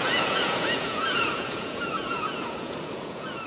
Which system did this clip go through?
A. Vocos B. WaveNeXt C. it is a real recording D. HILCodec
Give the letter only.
A